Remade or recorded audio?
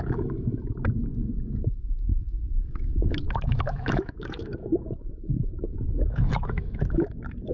remade